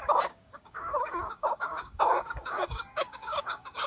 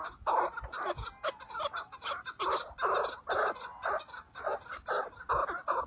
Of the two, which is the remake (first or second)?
first